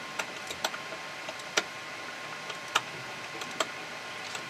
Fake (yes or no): no